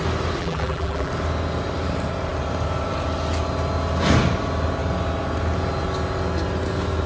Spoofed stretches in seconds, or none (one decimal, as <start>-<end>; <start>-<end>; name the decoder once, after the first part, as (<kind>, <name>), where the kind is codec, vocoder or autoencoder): 0.4-1.1 (vocoder, BigVGAN v2)